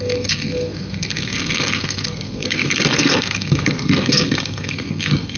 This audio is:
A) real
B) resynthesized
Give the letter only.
B